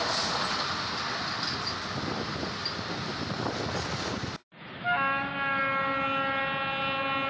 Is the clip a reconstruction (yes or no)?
no